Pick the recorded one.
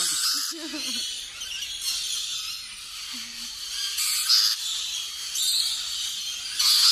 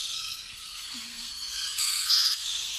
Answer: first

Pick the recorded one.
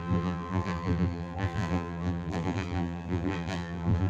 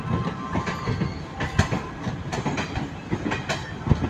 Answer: second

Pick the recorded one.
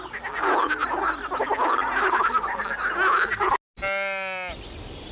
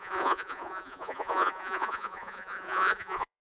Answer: first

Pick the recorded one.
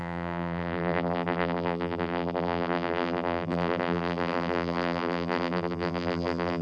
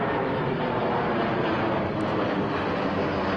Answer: second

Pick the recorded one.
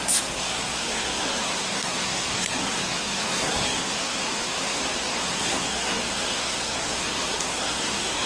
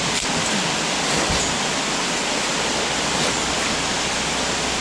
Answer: second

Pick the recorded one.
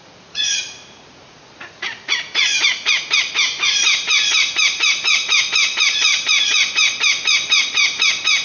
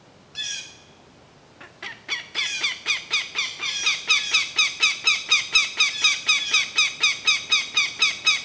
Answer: second